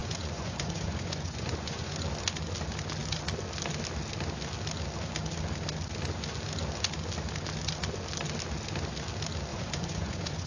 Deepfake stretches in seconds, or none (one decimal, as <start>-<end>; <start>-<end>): 0.0-1.9; 9.5-10.5